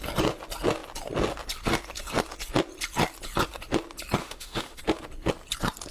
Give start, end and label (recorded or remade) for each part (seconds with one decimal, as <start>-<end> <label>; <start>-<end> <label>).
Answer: 0.0-4.2 recorded; 4.2-4.8 remade; 4.8-5.9 recorded